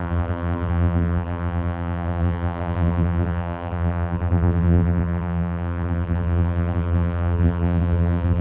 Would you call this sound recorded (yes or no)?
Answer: no